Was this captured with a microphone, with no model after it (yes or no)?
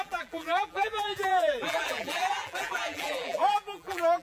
no